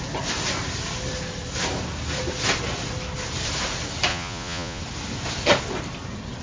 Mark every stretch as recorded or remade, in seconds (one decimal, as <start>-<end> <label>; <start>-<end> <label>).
0.0-4.1 recorded; 4.1-4.8 remade; 4.8-6.4 recorded